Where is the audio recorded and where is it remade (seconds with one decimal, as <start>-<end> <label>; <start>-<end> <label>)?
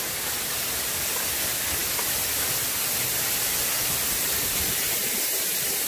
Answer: 0.0-5.9 recorded